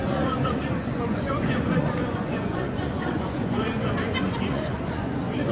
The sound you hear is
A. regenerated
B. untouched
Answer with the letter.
A